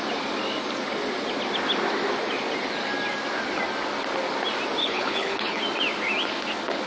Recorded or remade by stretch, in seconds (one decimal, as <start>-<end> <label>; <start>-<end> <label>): 0.0-4.8 recorded; 4.8-5.6 remade; 5.6-6.9 recorded